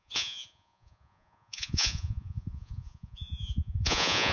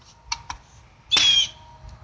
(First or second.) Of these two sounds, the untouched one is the second